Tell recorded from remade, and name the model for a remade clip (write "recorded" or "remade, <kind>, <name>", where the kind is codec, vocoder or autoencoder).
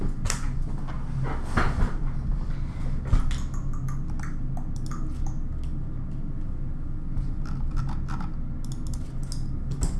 recorded